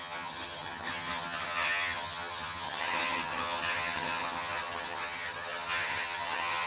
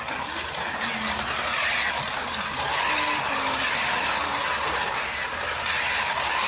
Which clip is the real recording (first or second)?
second